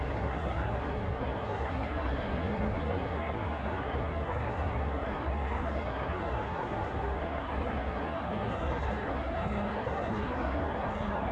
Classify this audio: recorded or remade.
remade